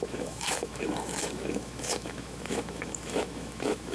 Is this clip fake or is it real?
fake